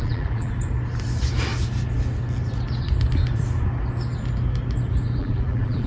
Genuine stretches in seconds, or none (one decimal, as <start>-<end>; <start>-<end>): 0.5-5.2